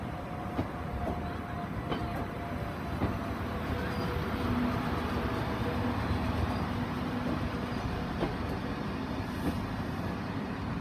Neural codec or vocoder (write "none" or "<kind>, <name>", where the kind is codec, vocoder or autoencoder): none